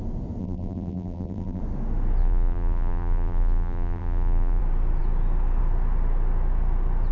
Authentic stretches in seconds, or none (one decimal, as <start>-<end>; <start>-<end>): 0.0-0.4; 1.6-2.2; 4.6-7.1